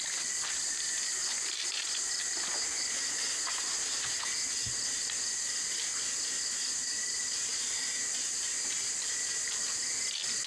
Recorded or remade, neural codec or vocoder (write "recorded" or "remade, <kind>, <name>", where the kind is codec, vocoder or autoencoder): recorded